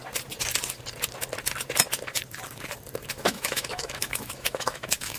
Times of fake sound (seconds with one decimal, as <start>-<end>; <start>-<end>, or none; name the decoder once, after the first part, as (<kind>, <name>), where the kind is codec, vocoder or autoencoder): 3.1-5.2 (autoencoder, DAC-VAE)